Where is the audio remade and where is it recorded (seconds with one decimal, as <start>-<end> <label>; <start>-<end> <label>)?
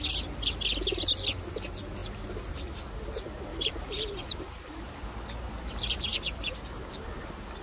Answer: 0.0-3.5 recorded; 3.5-5.1 remade; 5.1-6.1 recorded; 6.1-6.8 remade; 6.8-7.6 recorded